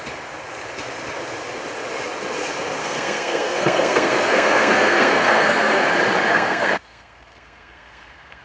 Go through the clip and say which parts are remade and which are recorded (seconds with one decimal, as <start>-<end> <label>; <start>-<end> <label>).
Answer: 0.0-2.8 recorded; 2.8-5.8 remade; 5.8-6.3 recorded; 6.3-8.4 remade